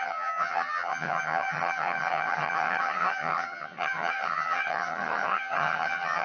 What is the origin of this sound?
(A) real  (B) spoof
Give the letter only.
B